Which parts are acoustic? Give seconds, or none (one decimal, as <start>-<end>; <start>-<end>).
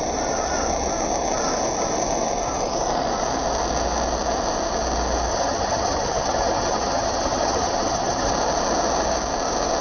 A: 0.0-5.3; 8.3-9.8